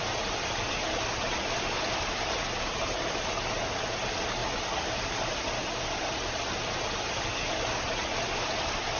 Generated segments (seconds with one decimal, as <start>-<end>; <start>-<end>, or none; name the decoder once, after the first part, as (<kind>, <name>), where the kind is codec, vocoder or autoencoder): none